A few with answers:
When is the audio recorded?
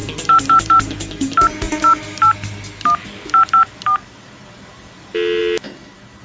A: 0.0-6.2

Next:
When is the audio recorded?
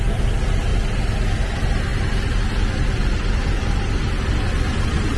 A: 0.0-5.2